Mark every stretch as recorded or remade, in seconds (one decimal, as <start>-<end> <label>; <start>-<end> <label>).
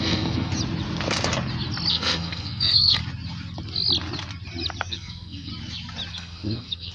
0.0-0.5 remade; 0.5-1.9 recorded; 1.9-3.0 remade; 3.0-4.9 recorded; 4.9-5.5 remade; 5.5-6.1 recorded; 6.1-6.9 remade